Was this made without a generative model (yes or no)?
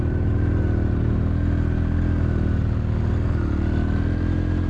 yes